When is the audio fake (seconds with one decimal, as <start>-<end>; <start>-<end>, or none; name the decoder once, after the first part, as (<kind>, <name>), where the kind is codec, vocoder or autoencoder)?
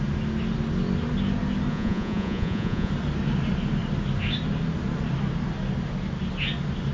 1.7-2.9 (vocoder, Vocos)